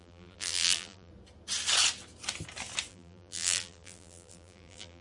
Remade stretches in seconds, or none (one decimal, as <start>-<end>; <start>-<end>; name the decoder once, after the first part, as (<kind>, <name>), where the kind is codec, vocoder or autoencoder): 0.0-1.1 (vocoder, BigVGAN v2); 2.9-5.0